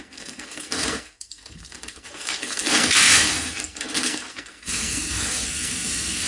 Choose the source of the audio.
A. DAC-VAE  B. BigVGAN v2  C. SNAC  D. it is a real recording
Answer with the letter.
C